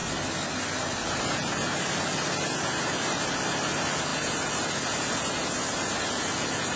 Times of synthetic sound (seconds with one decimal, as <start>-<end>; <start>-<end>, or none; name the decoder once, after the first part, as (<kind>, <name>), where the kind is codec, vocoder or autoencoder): none